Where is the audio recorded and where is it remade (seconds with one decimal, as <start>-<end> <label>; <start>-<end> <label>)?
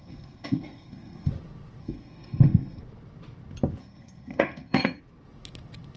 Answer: 0.0-1.3 remade; 1.3-1.8 recorded; 1.8-2.8 remade; 2.8-3.8 recorded; 3.8-5.0 remade; 5.0-6.0 recorded